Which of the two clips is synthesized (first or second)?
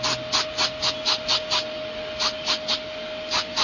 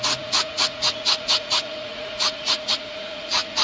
second